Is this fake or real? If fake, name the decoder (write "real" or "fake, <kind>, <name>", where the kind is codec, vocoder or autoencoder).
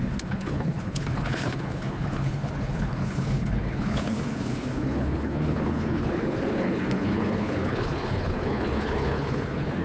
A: fake, codec, HILCodec